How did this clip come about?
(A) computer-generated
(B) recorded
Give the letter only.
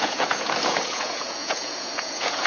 A